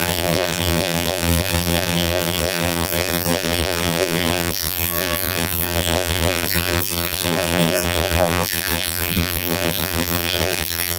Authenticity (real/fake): fake